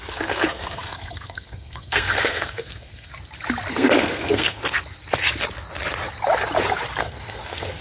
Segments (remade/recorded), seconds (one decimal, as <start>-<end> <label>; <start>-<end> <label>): 0.0-3.1 remade; 3.1-3.7 recorded; 3.7-4.6 remade; 4.6-7.0 recorded; 7.0-7.8 remade